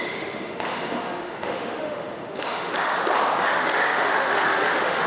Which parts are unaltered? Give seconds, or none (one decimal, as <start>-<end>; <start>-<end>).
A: 2.9-3.4